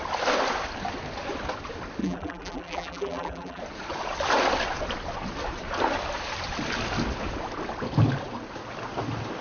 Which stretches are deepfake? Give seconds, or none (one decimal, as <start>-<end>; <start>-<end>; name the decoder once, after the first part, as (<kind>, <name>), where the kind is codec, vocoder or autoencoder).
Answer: 2.0-3.6 (vocoder, BigVGAN v2)